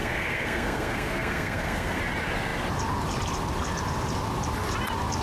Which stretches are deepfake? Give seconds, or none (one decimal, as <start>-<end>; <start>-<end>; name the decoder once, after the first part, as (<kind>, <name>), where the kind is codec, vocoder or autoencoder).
0.0-2.0 (codec, SNAC)

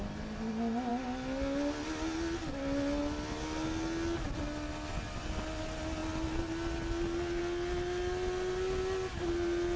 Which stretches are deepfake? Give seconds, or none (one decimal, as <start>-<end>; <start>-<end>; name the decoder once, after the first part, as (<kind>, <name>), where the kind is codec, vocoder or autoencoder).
none

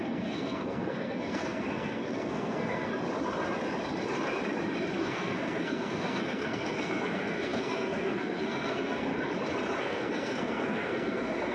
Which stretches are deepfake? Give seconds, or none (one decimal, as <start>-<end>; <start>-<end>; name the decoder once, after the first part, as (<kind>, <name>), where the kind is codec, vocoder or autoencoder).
0.0-2.9 (codec, SNAC); 5.0-9.1; 9.8-11.5

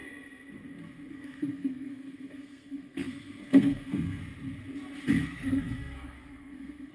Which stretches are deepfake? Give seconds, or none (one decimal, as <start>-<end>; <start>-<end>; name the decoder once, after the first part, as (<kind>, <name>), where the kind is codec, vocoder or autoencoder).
1.1-4.2 (codec, SNAC); 5.2-6.9

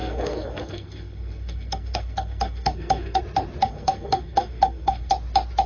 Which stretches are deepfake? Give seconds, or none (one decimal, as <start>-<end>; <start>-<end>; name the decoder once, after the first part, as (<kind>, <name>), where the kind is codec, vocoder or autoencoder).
0.0-3.2 (codec, SNAC); 3.6-5.1

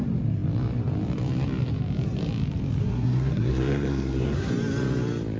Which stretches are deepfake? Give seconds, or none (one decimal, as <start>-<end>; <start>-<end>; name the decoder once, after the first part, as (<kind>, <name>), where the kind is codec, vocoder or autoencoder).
2.8-4.5 (codec, SNAC)

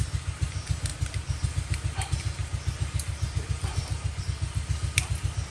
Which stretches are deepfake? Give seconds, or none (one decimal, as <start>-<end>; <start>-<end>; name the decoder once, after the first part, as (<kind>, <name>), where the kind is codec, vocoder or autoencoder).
none